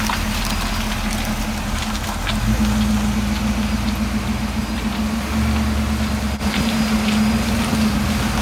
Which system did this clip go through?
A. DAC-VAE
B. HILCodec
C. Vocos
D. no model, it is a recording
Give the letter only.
D